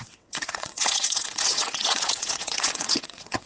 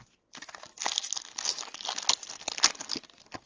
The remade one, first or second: first